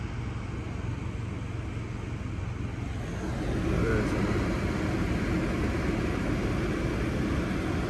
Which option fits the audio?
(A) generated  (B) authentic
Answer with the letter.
B